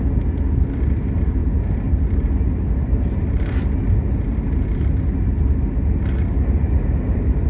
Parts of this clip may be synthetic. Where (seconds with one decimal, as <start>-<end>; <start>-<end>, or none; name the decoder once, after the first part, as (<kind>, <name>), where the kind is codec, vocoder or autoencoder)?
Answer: none